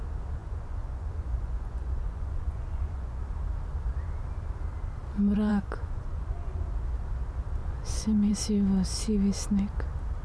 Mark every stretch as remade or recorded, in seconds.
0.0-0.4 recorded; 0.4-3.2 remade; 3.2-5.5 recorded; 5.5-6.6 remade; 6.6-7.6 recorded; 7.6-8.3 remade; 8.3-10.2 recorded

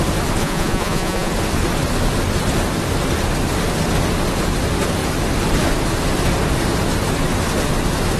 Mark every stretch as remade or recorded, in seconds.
0.0-0.4 recorded; 0.4-1.3 remade; 1.3-8.2 recorded

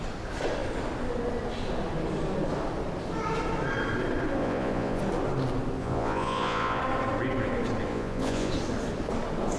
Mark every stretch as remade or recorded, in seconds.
0.0-4.4 recorded; 4.4-5.0 remade; 5.0-5.8 recorded; 5.8-6.8 remade; 6.8-7.9 recorded; 7.9-8.5 remade; 8.5-9.6 recorded

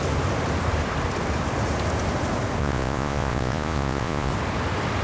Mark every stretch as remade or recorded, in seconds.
0.0-2.6 recorded; 2.6-4.3 remade; 4.3-5.0 recorded

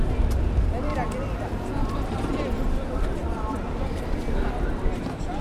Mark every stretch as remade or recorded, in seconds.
0.0-5.4 recorded

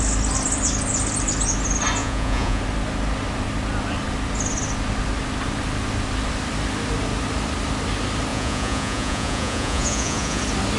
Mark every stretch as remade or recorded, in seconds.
0.0-2.0 recorded; 2.0-2.6 remade; 2.6-8.3 recorded; 8.3-10.4 remade; 10.4-10.8 recorded

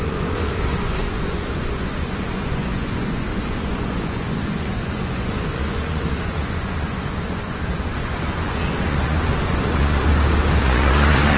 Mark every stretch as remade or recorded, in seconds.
0.0-10.1 remade; 10.1-10.6 recorded; 10.6-11.4 remade